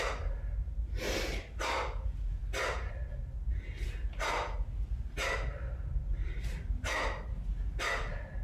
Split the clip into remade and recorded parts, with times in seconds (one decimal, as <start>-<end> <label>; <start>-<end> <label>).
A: 0.0-8.4 recorded